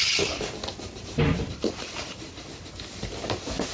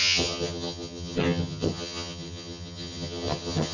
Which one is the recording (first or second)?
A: first